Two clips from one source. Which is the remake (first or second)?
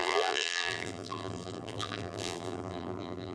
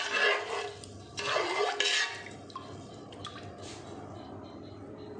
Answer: first